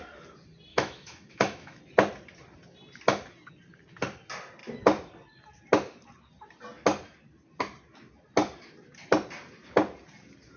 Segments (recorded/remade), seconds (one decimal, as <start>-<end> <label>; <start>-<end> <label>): 0.0-0.7 recorded; 0.7-1.8 remade; 1.8-10.6 recorded